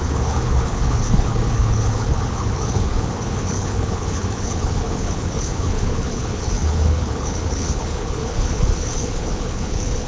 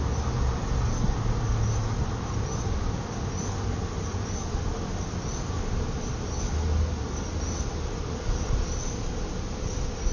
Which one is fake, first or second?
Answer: first